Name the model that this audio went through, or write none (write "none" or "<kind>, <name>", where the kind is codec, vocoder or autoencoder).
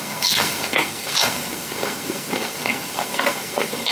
codec, SNAC